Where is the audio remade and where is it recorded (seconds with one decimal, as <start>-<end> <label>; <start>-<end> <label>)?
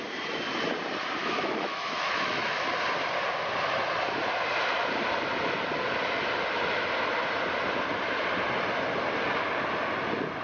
0.0-1.2 recorded; 1.2-2.7 remade; 2.7-10.4 recorded